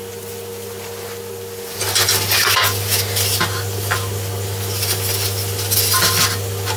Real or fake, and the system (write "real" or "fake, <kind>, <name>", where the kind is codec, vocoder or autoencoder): real